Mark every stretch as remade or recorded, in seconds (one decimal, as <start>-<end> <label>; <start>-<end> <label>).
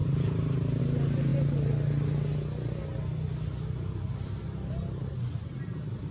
0.0-0.8 remade; 0.8-6.1 recorded